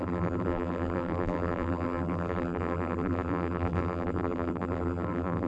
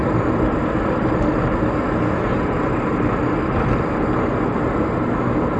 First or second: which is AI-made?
first